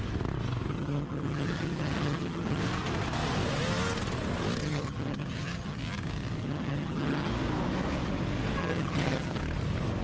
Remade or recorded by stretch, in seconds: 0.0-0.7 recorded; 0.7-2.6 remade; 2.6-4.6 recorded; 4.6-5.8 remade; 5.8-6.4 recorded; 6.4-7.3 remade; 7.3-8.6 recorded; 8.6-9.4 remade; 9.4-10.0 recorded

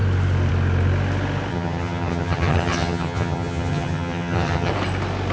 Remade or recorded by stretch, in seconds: 0.0-1.5 recorded; 1.5-4.7 remade; 4.7-5.3 recorded

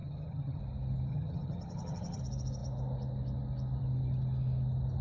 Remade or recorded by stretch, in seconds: 0.0-0.6 remade; 0.6-1.1 recorded; 1.1-2.2 remade; 2.2-5.0 recorded

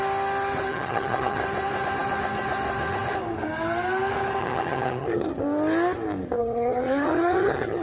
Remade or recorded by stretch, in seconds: 0.0-0.7 recorded; 0.7-1.4 remade; 1.4-4.4 recorded; 4.4-5.4 remade; 5.4-6.4 recorded; 6.4-7.8 remade